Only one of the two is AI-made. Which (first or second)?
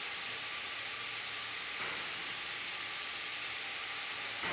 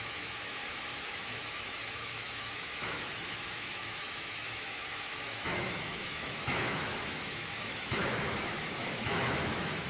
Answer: second